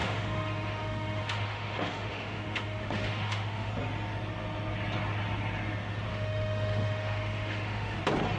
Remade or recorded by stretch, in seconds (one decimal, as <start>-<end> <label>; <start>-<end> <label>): 0.0-3.7 remade; 3.7-6.1 recorded; 6.1-8.0 remade; 8.0-8.4 recorded